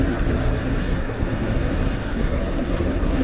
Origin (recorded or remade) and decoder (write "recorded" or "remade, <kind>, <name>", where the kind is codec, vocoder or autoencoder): remade, codec, SNAC